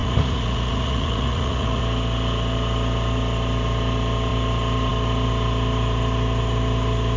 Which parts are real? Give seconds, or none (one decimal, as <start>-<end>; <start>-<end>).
1.8-7.2